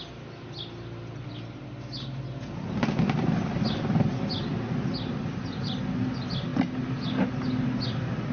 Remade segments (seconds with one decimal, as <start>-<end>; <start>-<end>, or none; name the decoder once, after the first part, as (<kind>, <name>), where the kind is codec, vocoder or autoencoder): none